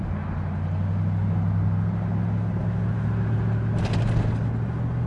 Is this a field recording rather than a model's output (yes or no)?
yes